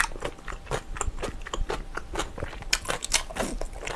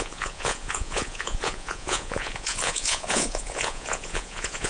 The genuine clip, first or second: first